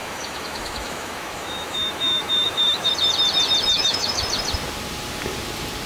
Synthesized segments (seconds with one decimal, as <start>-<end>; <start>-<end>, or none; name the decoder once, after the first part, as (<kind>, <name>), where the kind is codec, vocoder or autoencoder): 0.0-2.9 (autoencoder, DAC-VAE); 3.7-4.2